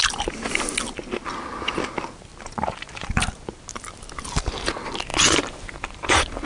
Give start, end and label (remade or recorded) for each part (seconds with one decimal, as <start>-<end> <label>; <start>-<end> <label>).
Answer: 0.0-2.3 recorded; 2.3-3.7 remade; 3.7-5.1 recorded; 5.1-6.5 remade